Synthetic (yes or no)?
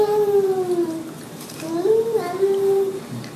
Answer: yes